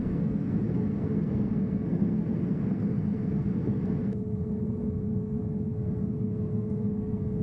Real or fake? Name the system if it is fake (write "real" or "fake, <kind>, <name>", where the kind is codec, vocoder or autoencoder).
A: fake, codec, SNAC